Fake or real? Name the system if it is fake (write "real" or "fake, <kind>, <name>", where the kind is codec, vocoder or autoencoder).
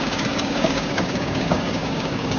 fake, codec, DAC